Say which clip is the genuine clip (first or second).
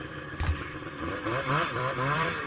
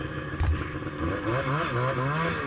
second